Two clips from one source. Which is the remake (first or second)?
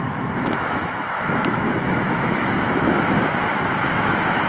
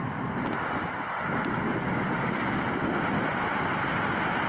first